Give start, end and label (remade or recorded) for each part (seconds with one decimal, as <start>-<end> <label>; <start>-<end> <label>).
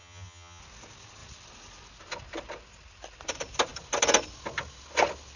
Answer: 0.0-0.6 remade; 0.6-5.4 recorded